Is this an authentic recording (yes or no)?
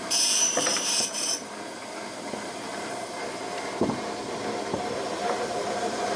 no